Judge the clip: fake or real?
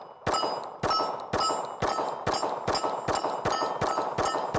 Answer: real